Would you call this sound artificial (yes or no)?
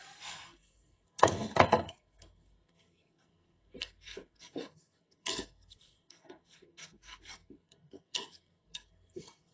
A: yes